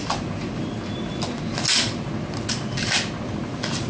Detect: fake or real real